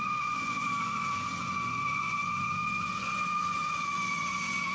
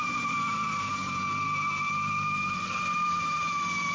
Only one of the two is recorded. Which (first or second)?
second